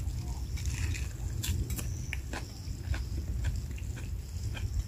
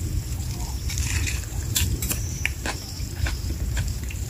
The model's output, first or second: second